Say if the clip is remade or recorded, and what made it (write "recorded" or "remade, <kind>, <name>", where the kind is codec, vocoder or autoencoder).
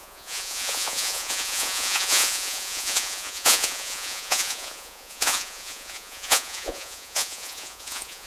remade, vocoder, Vocos